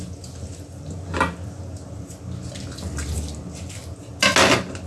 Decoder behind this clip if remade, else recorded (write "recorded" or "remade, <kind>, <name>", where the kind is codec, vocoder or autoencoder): recorded